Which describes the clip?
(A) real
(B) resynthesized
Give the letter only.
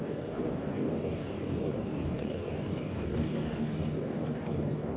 B